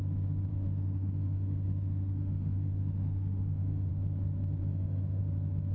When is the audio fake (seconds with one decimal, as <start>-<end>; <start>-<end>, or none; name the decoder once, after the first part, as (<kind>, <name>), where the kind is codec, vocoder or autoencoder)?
0.5-3.9 (autoencoder, DAC-VAE); 4.6-5.2